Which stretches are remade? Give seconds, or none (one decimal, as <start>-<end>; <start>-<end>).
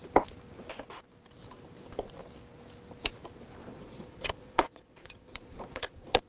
3.7-6.3